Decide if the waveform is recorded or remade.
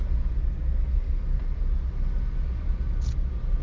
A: recorded